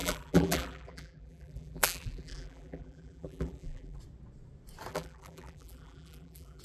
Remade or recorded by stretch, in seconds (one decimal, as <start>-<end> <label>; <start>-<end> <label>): 0.0-4.0 remade; 4.0-4.9 recorded; 4.9-6.6 remade